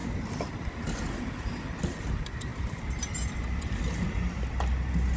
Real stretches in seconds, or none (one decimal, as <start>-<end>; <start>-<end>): 0.0-5.2